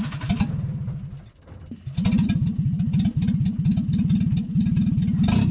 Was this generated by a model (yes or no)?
no